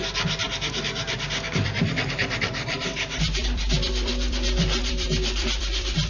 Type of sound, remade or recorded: remade